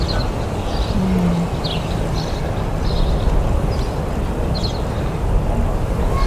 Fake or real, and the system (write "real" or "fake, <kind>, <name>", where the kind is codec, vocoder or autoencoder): real